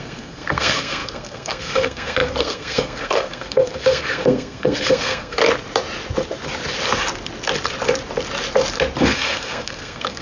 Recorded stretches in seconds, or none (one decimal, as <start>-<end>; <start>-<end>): 5.4-9.0